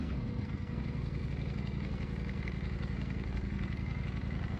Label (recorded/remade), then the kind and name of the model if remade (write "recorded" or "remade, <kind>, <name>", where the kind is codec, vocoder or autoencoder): remade, codec, SNAC